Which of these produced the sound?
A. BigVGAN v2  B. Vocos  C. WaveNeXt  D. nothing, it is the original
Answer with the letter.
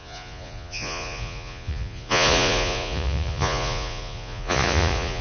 B